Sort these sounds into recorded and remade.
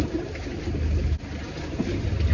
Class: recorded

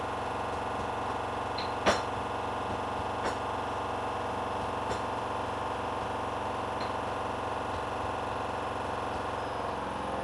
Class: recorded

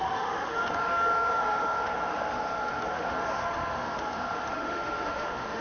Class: remade